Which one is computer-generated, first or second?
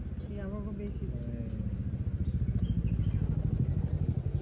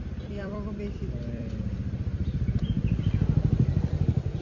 second